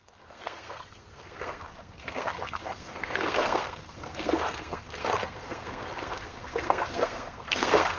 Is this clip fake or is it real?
fake